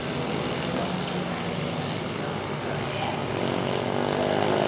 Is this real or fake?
real